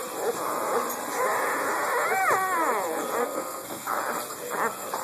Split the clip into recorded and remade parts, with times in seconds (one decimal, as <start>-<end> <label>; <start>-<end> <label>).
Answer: 0.0-3.2 recorded; 3.2-4.0 remade; 4.0-5.0 recorded